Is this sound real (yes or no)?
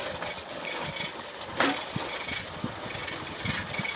yes